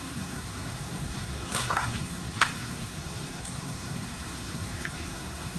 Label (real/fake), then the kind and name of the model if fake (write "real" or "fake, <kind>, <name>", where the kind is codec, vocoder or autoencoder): fake, codec, SNAC